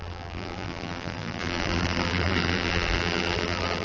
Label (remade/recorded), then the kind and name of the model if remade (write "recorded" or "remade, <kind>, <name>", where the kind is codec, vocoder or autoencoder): remade, vocoder, BigVGAN v2